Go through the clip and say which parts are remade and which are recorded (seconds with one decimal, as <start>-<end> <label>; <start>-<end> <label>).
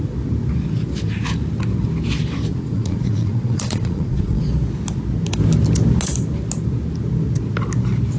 0.0-2.5 recorded; 2.5-4.5 remade; 4.5-8.2 recorded